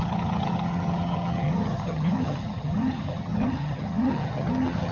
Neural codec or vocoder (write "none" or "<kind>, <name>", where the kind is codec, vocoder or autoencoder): vocoder, HiFi-GAN